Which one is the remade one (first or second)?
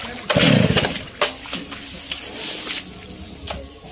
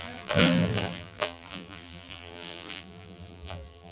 second